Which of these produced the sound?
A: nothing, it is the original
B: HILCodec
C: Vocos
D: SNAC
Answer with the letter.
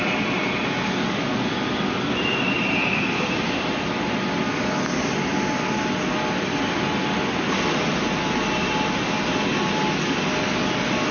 A